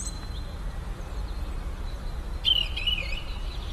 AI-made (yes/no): no